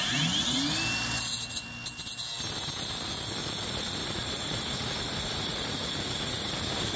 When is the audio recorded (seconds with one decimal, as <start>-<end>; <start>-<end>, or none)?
0.0-3.4; 6.5-7.0